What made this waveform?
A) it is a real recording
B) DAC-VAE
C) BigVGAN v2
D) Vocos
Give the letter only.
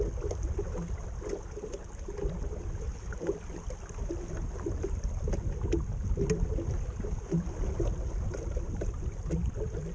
A